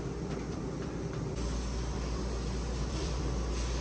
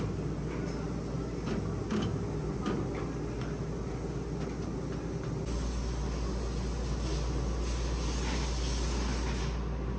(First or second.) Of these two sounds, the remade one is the first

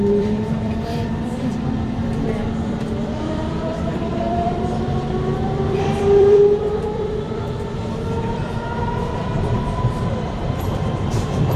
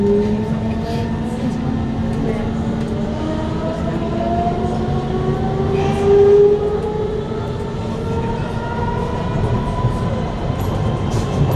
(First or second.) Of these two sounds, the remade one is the first